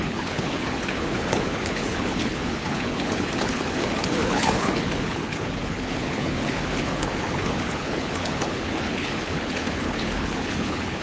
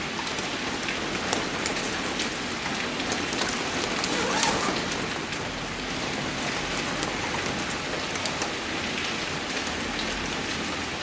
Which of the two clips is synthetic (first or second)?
first